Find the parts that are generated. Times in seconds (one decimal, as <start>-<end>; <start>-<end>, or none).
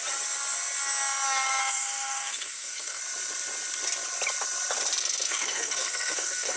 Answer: 1.6-3.0; 5.0-6.6